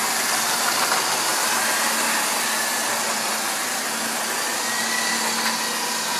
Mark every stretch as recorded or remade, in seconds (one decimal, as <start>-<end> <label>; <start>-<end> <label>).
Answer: 0.0-6.2 recorded